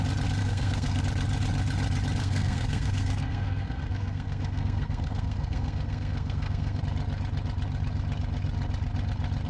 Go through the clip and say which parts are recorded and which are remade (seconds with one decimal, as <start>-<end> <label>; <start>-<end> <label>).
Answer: 0.0-0.4 recorded; 0.4-1.0 remade; 1.0-2.2 recorded; 2.2-6.8 remade; 6.8-9.5 recorded